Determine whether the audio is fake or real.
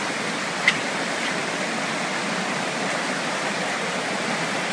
real